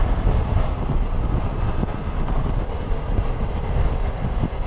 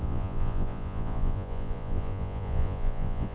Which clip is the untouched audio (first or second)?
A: first